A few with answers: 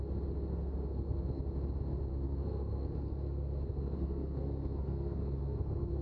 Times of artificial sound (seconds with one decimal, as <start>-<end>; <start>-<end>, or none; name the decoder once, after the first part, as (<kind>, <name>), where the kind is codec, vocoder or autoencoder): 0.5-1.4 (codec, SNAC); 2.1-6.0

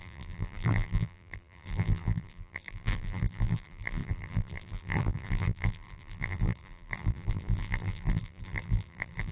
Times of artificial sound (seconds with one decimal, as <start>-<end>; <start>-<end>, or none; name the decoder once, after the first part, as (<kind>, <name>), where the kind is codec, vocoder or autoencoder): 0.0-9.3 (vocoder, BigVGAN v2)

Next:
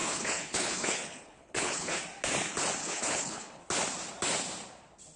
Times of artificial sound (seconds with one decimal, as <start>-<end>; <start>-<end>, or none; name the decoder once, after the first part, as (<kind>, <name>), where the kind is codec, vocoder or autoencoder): 0.0-2.0 (codec, HILCodec); 2.8-3.6

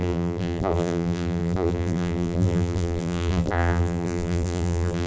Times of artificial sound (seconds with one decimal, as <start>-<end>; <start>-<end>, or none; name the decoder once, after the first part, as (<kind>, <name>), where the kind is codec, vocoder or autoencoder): 0.0-5.1 (vocoder, BigVGAN v2)